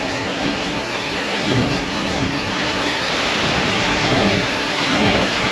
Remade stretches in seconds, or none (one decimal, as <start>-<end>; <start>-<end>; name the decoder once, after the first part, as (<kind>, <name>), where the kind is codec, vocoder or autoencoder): 0.0-3.1 (codec, SNAC); 3.7-5.5